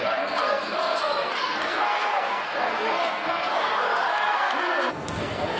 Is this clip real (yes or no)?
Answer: no